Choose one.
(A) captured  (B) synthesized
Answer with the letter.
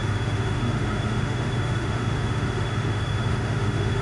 B